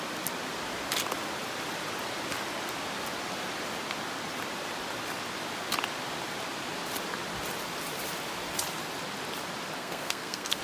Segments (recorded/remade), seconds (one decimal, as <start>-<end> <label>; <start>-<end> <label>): 0.0-9.8 recorded; 9.8-10.6 remade